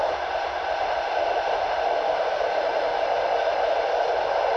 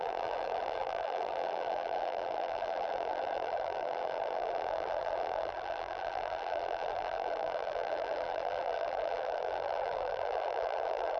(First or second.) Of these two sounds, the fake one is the second